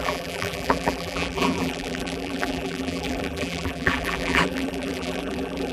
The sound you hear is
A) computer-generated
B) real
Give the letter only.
A